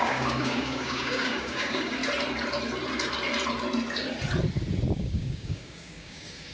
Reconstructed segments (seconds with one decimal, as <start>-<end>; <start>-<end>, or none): 0.0-2.0; 5.0-6.5